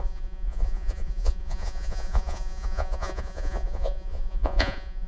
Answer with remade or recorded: remade